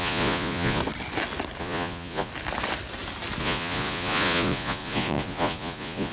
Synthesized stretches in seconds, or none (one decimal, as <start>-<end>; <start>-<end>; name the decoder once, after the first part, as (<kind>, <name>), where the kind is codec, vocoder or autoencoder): 0.0-0.8 (vocoder, Vocos); 1.6-2.3; 3.4-6.1